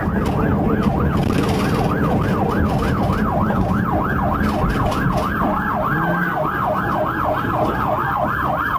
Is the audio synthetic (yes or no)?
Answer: no